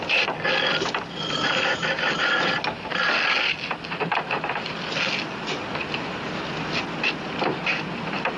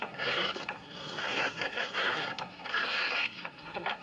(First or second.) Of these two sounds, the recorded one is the first